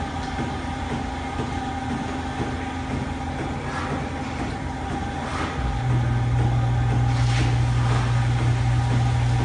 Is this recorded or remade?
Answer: recorded